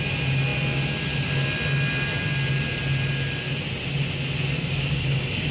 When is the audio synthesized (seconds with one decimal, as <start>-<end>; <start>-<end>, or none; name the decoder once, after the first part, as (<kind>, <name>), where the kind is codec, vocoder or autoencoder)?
4.6-5.5 (codec, DAC)